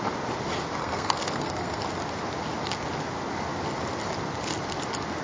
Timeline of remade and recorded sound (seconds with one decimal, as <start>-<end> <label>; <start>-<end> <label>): 0.0-0.8 recorded; 0.8-1.8 remade; 1.8-5.2 recorded